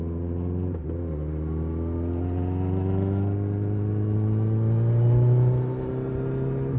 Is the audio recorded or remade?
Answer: recorded